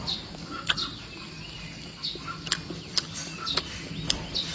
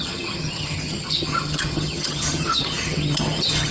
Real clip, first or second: first